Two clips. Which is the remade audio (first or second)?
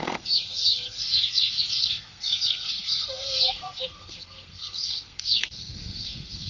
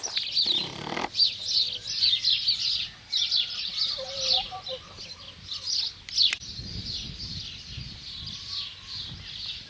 first